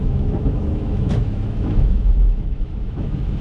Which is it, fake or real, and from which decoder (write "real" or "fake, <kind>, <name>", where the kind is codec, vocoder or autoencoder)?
fake, autoencoder, DAC-VAE